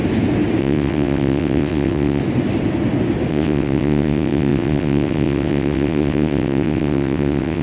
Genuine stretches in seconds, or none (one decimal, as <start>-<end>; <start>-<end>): 0.0-0.6; 2.2-3.3